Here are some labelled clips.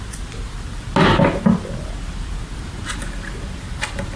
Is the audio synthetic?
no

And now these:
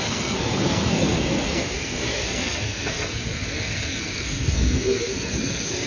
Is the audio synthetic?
yes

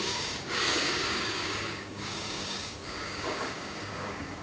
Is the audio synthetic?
yes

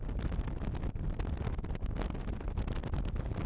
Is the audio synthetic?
no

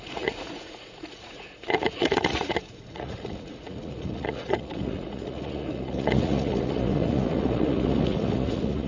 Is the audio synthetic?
yes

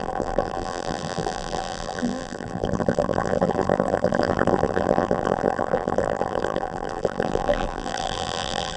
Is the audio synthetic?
yes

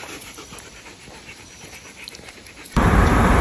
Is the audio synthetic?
yes